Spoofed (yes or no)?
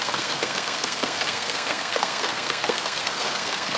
yes